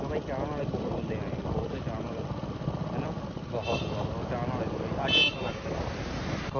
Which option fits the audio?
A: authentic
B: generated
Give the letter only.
A